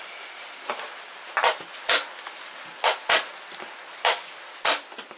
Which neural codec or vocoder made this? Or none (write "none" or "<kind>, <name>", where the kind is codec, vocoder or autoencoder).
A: none